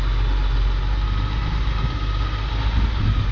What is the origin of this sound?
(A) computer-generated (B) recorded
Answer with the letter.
B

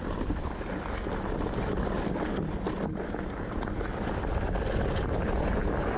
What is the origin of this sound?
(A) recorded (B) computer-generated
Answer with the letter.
A